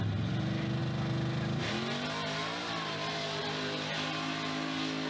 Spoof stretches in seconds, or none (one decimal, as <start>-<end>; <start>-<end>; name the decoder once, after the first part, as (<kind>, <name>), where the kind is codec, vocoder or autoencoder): none